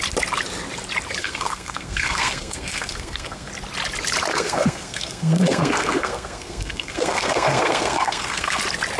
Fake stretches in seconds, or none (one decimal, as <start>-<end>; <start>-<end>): 1.2-3.5; 4.3-8.6